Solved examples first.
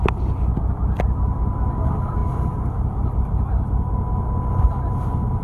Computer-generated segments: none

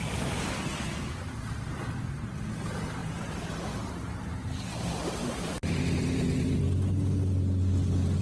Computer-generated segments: 3.0-3.9 (vocoder, BigVGAN v2); 5.2-6.6

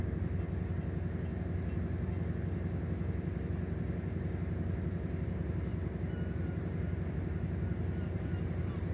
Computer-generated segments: none

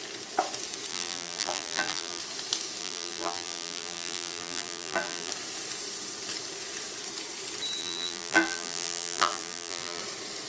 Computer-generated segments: 0.9-2.2 (vocoder, BigVGAN v2); 2.8-5.3; 7.8-10.0

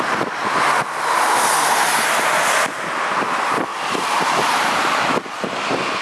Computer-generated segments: 3.7-5.5 (vocoder, BigVGAN v2)

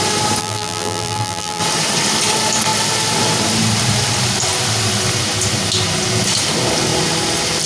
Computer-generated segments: 0.4-1.6 (vocoder, BigVGAN v2)

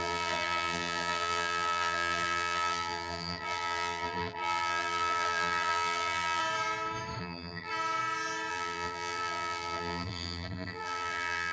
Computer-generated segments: 0.0-6.4 (vocoder, BigVGAN v2); 7.2-7.7; 8.5-11.5